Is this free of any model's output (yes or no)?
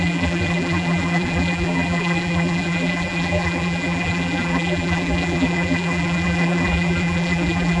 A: no